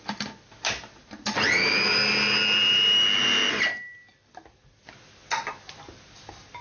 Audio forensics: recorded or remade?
recorded